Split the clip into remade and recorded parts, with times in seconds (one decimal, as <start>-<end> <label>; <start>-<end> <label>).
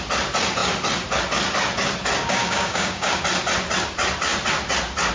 0.0-2.2 recorded; 2.2-3.2 remade; 3.2-5.1 recorded